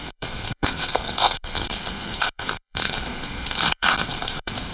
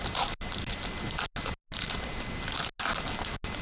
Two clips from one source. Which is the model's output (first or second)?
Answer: first